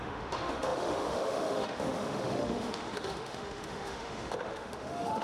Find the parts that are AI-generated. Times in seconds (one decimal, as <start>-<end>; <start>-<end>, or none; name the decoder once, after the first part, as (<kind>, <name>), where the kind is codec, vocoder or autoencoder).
0.0-5.2 (autoencoder, DAC-VAE)